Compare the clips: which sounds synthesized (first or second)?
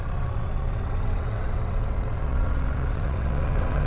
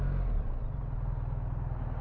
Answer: first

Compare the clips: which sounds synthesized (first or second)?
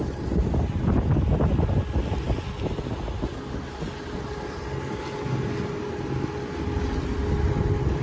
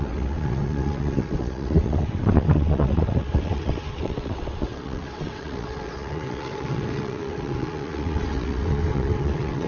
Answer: second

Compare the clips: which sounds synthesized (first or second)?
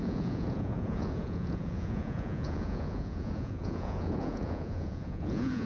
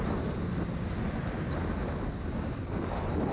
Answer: first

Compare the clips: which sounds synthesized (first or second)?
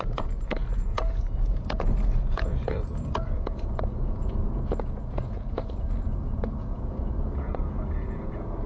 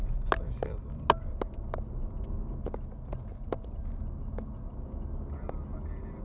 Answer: first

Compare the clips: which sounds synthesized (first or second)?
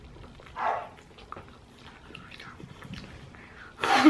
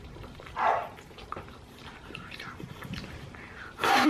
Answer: second